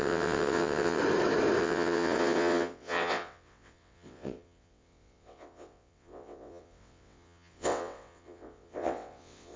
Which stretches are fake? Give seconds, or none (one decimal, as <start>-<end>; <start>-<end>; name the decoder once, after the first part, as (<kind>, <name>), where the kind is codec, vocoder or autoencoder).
0.0-1.0 (vocoder, WaveNeXt); 1.6-9.6